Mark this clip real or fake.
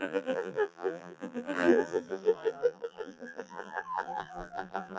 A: fake